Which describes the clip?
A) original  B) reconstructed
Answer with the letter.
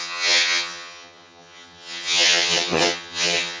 B